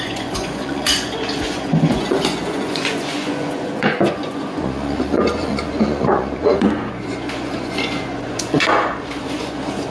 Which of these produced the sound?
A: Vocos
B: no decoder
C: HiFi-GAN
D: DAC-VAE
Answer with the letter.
A